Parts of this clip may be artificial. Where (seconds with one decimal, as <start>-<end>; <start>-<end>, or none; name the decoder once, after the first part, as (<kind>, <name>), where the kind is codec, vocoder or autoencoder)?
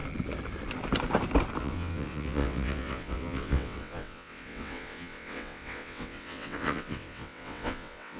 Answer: 1.6-8.2 (vocoder, WaveNeXt)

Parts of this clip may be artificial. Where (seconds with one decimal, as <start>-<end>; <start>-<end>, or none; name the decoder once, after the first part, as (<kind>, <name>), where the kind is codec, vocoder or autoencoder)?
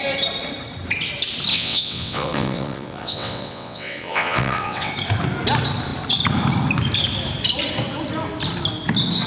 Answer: 1.5-4.9 (vocoder, WaveNeXt)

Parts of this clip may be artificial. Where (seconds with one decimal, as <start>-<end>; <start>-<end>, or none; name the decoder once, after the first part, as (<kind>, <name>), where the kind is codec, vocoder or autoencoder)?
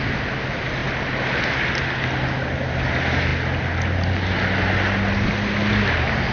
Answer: none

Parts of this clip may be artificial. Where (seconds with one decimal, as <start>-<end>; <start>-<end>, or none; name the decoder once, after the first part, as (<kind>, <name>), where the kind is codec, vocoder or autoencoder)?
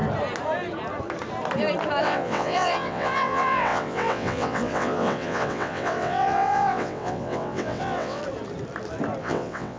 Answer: 2.0-8.2 (vocoder, WaveNeXt); 9.2-9.8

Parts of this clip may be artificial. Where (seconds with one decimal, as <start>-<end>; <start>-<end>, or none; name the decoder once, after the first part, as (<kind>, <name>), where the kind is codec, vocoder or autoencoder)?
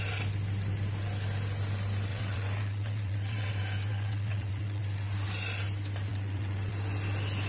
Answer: 2.1-3.5 (vocoder, WaveNeXt); 3.9-4.8; 6.1-6.7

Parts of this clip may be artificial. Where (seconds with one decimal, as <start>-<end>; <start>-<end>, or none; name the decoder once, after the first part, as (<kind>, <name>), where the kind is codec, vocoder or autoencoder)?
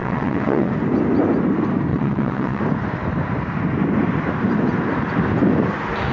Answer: 0.0-0.7 (vocoder, WaveNeXt); 1.9-2.6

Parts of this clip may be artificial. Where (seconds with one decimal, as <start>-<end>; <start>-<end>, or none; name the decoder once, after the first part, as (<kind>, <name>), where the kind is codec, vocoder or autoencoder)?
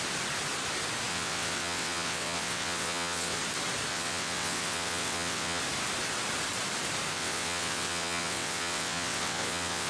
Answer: 1.1-3.4 (vocoder, WaveNeXt); 3.9-5.6; 7.1-9.9